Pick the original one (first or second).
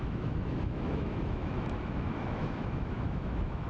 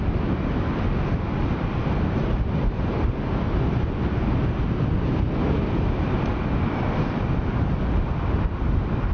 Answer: second